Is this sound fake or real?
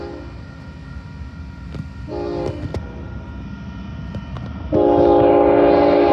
real